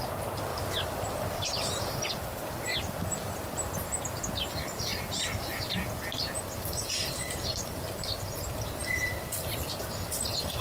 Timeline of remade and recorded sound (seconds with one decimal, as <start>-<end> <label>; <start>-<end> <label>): 0.0-0.5 recorded; 0.5-1.9 remade; 1.9-2.7 recorded; 2.7-3.7 remade; 3.7-4.9 recorded; 4.9-8.4 remade; 8.4-8.8 recorded; 8.8-9.8 remade; 9.8-10.6 recorded